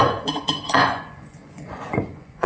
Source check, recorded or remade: remade